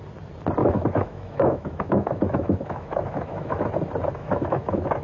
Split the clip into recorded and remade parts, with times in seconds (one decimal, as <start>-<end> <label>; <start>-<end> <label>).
0.0-0.6 recorded; 0.6-3.6 remade; 3.6-4.2 recorded; 4.2-5.0 remade